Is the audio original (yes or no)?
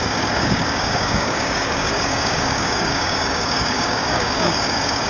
no